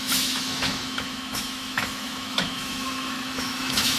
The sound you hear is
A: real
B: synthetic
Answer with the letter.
B